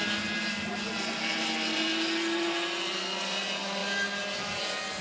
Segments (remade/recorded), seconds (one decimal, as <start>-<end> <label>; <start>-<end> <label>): 0.0-5.0 recorded